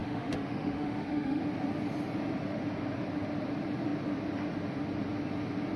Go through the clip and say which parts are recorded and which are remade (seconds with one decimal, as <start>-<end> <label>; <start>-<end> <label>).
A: 0.0-1.4 remade; 1.4-5.8 recorded